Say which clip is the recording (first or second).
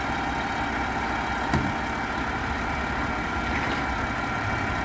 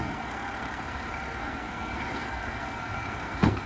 first